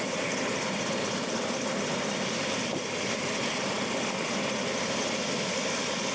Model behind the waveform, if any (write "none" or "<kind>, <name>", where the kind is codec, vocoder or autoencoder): vocoder, BigVGAN v2